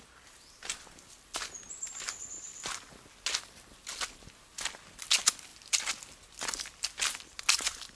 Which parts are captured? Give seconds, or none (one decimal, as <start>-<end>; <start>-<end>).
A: 0.0-8.0